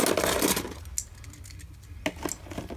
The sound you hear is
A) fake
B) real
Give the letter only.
B